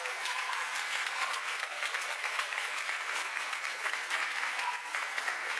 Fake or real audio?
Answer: fake